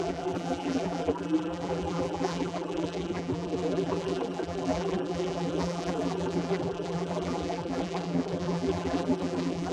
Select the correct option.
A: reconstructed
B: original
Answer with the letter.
A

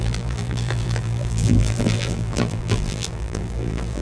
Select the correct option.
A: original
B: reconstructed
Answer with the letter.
B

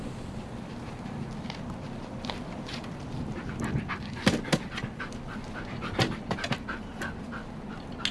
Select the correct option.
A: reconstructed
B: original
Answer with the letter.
B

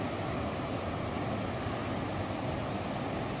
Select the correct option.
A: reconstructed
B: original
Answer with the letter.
B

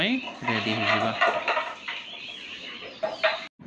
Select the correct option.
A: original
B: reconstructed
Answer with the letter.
A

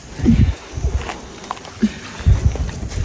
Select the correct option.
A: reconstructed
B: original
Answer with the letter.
A